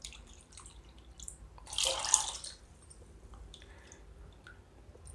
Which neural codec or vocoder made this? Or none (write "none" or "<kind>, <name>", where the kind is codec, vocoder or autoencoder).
vocoder, BigVGAN v2